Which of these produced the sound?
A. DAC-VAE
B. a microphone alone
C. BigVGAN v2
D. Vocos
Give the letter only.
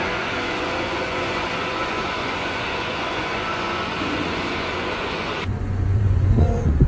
D